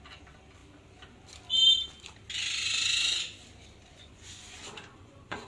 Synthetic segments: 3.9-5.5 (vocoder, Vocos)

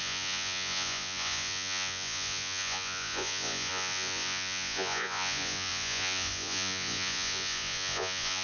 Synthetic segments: 0.0-8.4 (vocoder, Vocos)